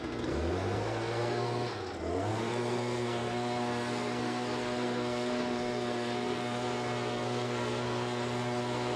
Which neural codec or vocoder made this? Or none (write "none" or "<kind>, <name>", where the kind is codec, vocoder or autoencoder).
codec, SNAC